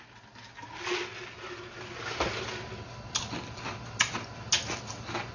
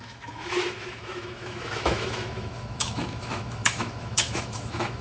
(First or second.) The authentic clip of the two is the first